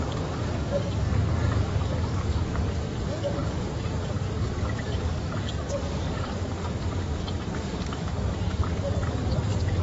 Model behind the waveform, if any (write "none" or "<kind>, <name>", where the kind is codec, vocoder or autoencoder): codec, DAC